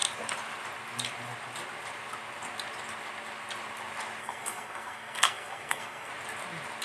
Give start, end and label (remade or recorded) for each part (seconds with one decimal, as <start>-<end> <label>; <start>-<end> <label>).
0.0-4.2 recorded; 4.2-6.1 remade; 6.1-6.8 recorded